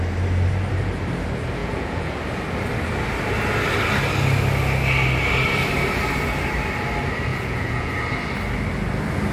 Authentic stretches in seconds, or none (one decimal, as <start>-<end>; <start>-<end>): 0.0-1.6; 2.2-7.3; 7.9-9.3